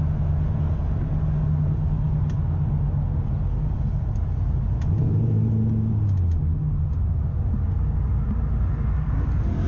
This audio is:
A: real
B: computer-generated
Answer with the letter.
A